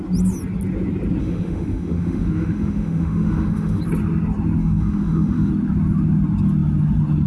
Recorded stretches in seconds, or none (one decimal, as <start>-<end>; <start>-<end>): 0.0-1.2; 3.8-4.6; 5.5-7.3